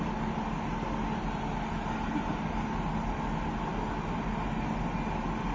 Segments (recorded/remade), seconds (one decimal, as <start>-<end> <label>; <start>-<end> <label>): 0.0-5.5 recorded